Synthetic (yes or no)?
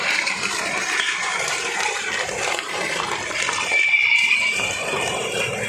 yes